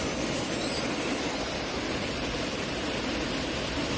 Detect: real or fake real